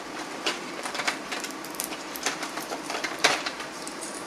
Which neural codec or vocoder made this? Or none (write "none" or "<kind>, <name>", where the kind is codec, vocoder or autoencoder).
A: vocoder, BigVGAN v2